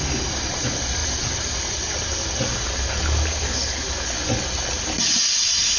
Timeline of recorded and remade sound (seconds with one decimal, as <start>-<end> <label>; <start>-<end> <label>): 0.0-5.8 recorded